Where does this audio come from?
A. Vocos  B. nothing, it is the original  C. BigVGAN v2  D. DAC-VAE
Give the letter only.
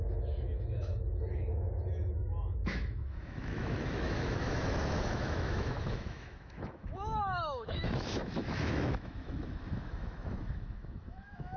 D